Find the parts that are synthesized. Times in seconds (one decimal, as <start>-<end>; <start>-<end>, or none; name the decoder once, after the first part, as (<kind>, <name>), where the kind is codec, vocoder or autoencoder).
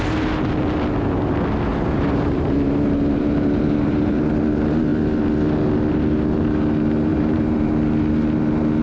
1.7-4.3 (vocoder, BigVGAN v2); 7.1-7.7